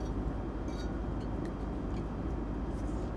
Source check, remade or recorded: recorded